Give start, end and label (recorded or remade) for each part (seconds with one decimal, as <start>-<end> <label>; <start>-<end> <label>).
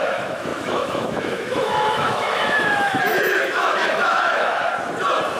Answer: 0.0-4.6 remade; 4.6-5.4 recorded